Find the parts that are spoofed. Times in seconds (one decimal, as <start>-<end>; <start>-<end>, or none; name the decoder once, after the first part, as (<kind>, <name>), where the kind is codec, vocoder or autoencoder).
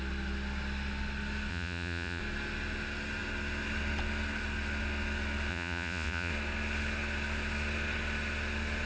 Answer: 1.5-2.2 (vocoder, Vocos); 5.5-6.3